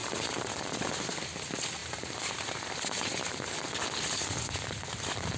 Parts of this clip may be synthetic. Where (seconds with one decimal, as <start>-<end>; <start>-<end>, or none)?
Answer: 0.0-0.9; 1.8-3.4